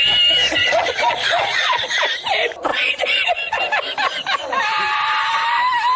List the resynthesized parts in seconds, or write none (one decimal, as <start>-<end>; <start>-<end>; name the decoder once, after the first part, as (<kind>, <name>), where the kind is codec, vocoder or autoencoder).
0.6-1.9 (vocoder, Vocos); 2.7-3.6